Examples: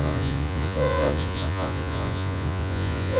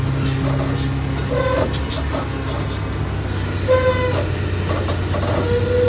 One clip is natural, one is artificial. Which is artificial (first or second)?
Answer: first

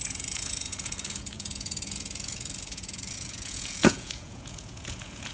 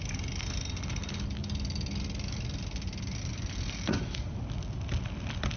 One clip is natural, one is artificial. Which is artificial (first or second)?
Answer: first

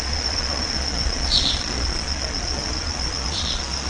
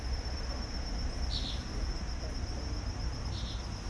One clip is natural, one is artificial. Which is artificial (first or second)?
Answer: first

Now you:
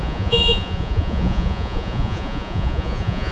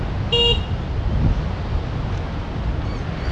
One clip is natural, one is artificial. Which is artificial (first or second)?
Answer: first